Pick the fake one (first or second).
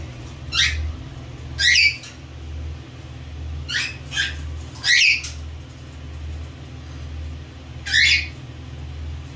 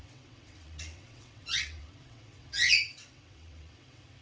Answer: second